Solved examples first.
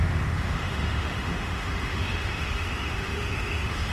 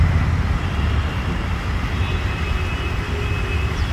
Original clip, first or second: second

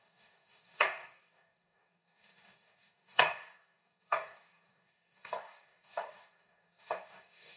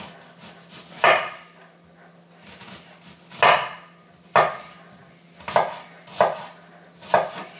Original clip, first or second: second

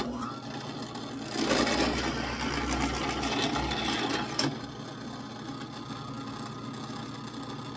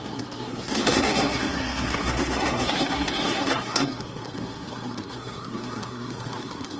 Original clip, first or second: first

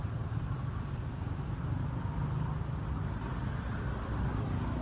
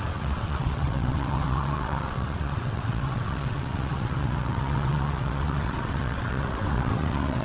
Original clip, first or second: first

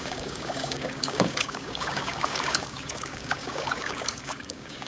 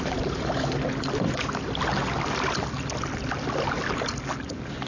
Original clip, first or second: second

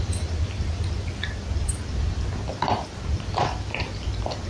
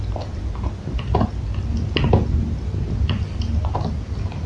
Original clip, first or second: second